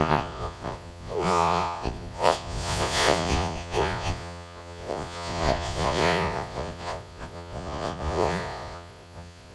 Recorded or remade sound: remade